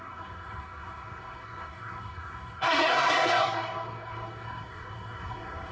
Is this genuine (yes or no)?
no